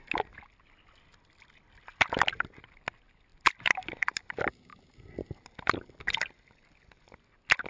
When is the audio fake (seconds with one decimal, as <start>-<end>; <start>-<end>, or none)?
none